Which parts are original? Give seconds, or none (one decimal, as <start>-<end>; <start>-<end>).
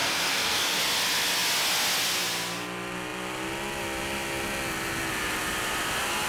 0.8-6.3